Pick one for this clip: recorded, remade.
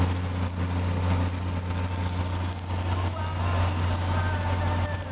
recorded